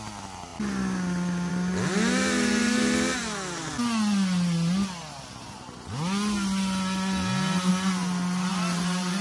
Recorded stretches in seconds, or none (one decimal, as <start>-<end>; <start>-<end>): 0.0-8.5